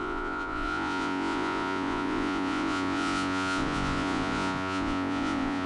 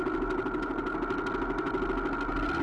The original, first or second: second